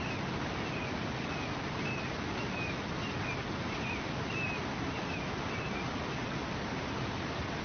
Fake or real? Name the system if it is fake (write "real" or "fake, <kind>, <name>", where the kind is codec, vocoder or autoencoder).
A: real